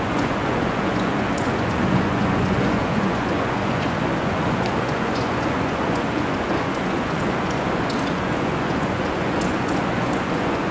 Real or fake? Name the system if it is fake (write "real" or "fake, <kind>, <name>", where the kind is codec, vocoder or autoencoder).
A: fake, vocoder, Vocos